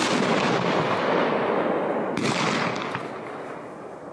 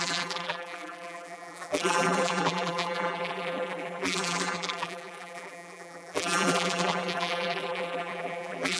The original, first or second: first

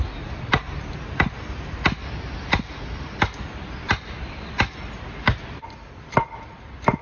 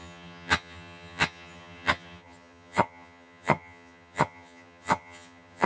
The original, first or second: first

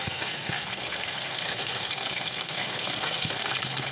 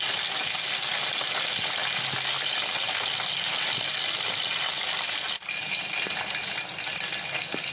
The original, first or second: second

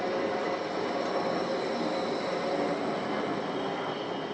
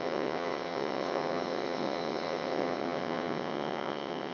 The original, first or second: first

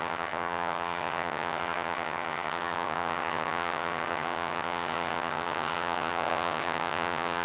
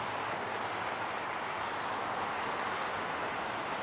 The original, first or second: second